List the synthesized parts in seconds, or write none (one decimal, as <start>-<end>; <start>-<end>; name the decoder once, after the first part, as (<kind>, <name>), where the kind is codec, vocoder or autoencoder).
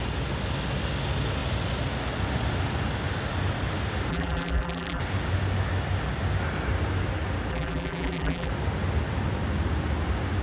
4.1-5.0 (vocoder, BigVGAN v2); 7.5-8.5